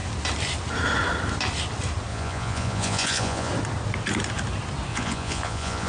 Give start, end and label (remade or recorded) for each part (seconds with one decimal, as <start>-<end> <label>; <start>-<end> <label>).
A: 0.0-2.1 recorded; 2.1-3.5 remade; 3.5-4.9 recorded; 4.9-5.9 remade